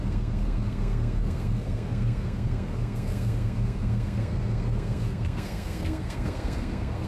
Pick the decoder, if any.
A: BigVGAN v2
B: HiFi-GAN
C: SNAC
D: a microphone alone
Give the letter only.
C